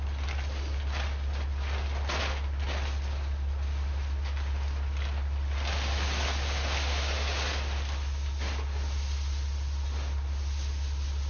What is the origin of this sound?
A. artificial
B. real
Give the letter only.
B